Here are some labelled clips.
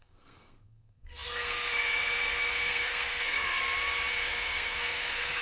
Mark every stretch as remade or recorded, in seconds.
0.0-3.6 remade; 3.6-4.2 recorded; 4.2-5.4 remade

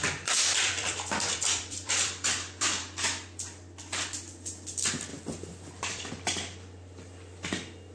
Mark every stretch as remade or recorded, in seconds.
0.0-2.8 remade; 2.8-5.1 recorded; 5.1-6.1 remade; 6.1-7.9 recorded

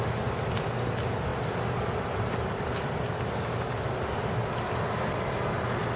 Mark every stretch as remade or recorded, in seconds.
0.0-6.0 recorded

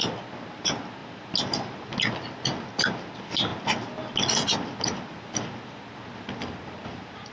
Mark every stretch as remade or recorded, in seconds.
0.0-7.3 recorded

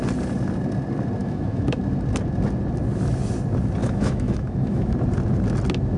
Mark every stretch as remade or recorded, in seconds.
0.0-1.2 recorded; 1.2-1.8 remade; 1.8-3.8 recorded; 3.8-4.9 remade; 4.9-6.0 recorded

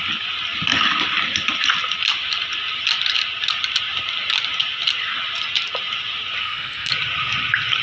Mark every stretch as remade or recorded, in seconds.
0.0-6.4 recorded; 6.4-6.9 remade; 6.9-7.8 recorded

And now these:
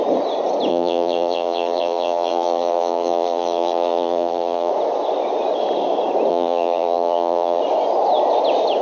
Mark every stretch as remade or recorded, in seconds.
0.0-0.7 recorded; 0.7-4.7 remade; 4.7-6.3 recorded; 6.3-7.6 remade; 7.6-8.8 recorded

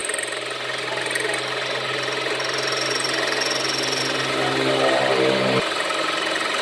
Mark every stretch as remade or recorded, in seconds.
0.0-6.6 recorded